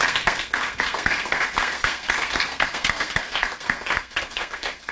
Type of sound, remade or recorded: remade